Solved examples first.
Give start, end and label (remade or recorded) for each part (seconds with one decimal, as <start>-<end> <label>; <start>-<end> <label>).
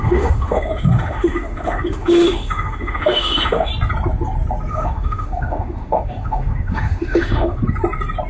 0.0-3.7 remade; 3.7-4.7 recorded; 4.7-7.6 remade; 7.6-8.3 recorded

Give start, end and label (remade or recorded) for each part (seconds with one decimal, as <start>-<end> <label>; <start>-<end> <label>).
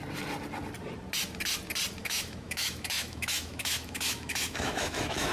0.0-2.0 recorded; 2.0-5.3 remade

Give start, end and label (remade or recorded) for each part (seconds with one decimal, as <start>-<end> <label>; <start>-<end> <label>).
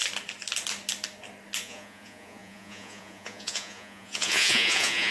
0.0-1.6 recorded; 1.6-5.1 remade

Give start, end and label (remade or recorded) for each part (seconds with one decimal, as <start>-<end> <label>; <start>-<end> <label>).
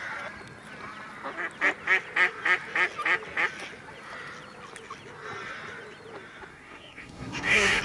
0.0-6.5 recorded; 6.5-7.8 remade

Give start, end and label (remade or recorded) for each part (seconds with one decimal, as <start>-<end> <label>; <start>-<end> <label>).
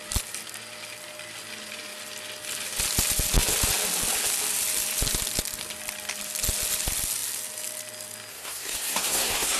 0.0-8.3 recorded; 8.3-9.6 remade